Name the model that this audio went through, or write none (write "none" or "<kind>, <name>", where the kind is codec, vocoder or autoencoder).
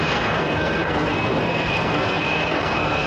codec, SNAC